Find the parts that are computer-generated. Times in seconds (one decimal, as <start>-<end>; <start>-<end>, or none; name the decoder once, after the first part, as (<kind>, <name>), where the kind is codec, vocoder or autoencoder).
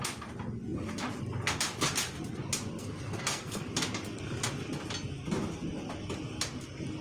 2.8-3.7 (codec, SNAC)